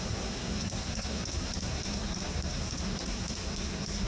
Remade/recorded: remade